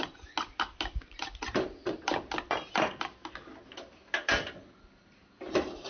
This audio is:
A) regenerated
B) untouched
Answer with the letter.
B